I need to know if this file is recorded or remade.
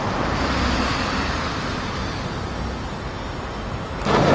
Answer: recorded